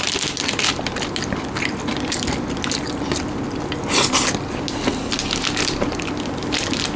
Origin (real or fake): real